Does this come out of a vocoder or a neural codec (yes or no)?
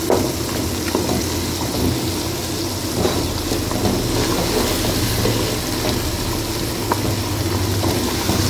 no